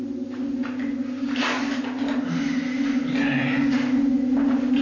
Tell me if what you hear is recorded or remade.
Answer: recorded